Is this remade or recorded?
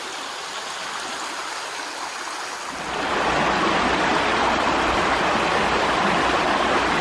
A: recorded